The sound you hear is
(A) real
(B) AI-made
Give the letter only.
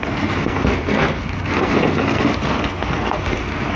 B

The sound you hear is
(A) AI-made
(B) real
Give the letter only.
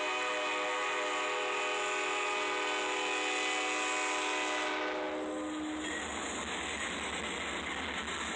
B